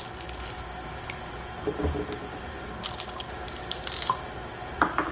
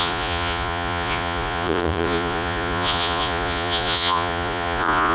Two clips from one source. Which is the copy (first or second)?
second